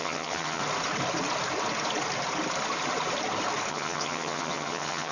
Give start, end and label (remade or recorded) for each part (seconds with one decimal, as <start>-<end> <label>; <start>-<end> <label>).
0.0-0.6 remade; 0.6-3.7 recorded; 3.7-5.1 remade